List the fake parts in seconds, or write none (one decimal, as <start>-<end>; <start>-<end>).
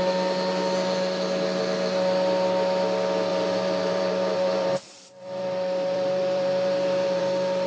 3.3-7.2